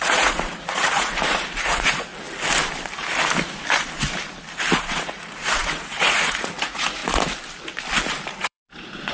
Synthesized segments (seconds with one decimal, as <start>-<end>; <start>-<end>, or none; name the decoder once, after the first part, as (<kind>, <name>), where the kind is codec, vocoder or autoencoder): 0.0-2.1 (vocoder, Vocos); 4.8-7.0; 8.3-9.1

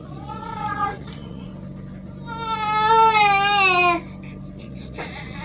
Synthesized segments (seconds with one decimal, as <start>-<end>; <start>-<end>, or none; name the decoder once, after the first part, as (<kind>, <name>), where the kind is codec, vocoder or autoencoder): 0.0-1.5 (vocoder, Vocos); 4.6-5.4

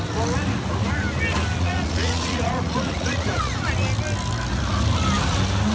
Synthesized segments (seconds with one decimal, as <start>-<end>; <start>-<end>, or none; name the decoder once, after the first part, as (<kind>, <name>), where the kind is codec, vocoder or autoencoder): 1.6-3.7 (vocoder, Vocos)

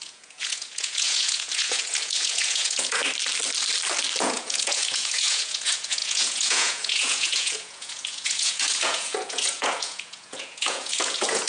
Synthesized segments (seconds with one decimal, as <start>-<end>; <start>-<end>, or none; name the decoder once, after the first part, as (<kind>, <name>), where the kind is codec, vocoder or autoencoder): 0.0-3.0 (vocoder, Vocos); 4.2-11.5

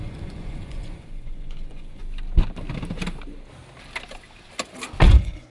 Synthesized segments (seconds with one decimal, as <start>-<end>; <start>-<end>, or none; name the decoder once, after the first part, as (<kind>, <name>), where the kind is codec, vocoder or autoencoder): 0.0-2.0 (vocoder, Vocos); 5.1-5.5

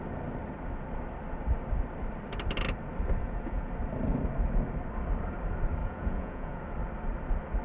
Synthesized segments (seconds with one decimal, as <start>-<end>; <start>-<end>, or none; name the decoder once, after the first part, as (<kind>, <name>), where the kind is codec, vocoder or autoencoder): 3.2-3.7 (vocoder, Vocos); 5.8-6.6